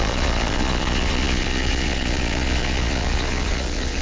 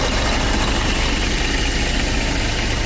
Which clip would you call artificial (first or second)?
first